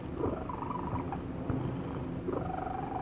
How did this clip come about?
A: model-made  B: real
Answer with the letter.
B